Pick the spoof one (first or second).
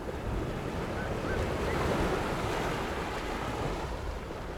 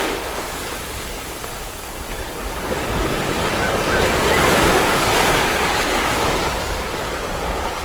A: second